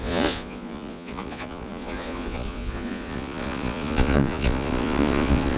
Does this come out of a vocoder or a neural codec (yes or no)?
yes